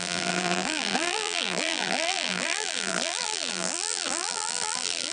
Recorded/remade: remade